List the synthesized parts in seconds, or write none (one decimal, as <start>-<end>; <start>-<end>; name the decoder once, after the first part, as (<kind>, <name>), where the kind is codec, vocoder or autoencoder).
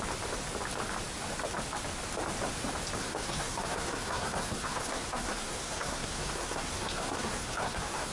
3.0-8.1 (codec, SNAC)